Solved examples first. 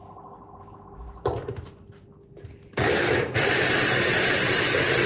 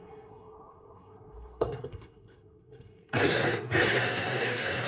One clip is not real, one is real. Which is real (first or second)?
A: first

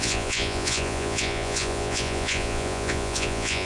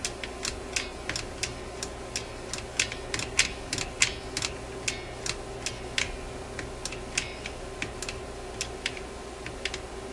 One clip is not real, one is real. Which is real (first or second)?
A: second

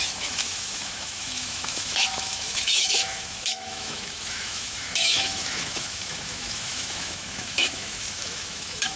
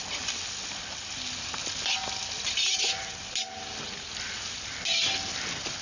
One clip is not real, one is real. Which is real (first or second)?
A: second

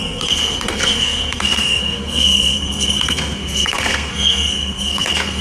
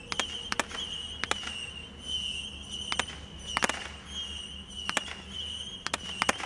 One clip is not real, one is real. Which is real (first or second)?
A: second